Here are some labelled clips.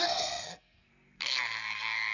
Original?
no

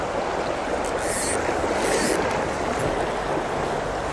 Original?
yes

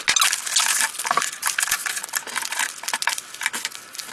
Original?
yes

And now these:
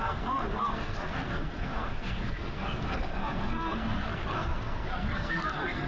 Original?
no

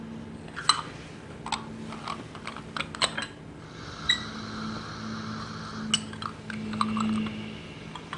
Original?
yes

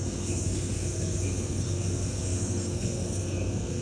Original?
no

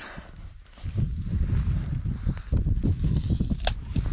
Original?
yes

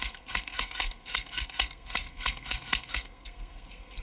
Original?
no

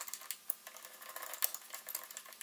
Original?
yes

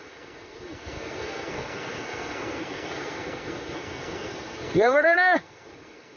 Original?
no